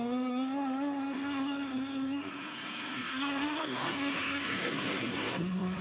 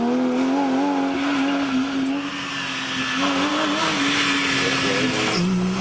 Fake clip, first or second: first